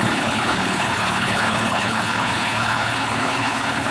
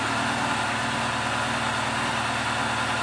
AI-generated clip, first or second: first